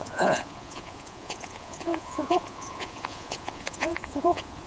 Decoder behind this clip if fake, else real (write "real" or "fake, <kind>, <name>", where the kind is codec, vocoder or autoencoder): fake, vocoder, Vocos